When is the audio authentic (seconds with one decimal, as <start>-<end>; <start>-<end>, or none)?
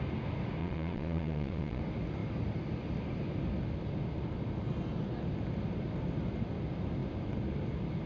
0.0-0.6; 1.8-8.1